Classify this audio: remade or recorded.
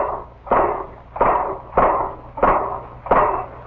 recorded